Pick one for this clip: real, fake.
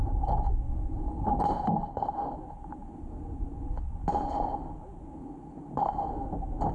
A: real